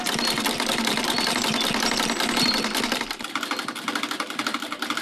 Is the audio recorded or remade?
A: recorded